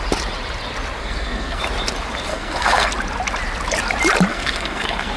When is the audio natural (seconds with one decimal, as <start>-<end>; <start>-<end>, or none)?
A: 0.0-1.0; 1.6-2.3; 2.9-4.3